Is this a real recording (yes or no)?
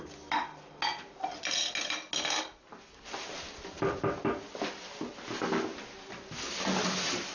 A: yes